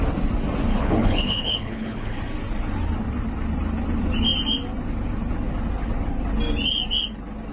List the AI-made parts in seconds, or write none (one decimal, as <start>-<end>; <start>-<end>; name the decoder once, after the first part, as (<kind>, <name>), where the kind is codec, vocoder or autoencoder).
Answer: 0.7-2.2 (codec, HILCodec)